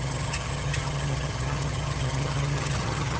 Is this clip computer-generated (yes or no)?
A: yes